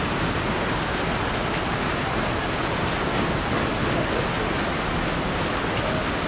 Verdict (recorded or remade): recorded